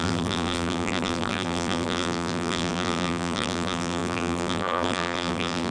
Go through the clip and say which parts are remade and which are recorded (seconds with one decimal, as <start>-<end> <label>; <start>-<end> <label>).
0.0-5.7 remade